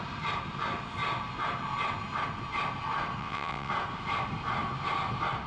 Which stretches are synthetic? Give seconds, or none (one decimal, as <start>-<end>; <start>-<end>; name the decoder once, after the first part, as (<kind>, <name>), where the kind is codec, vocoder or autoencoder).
3.2-3.7 (vocoder, WaveNeXt)